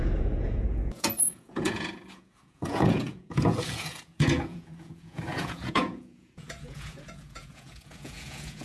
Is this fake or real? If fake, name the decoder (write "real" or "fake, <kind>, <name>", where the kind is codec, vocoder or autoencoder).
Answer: fake, vocoder, Vocos